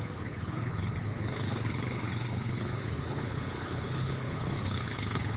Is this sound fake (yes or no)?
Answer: yes